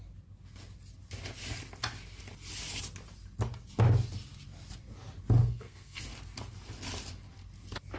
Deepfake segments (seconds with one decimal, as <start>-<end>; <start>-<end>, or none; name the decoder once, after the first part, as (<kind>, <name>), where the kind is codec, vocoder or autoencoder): 5.4-6.0 (codec, SNAC)